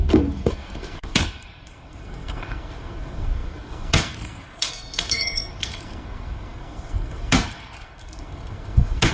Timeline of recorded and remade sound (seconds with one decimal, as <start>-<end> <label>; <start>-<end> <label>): 0.0-9.1 remade